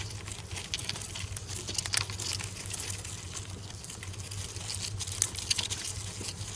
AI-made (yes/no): no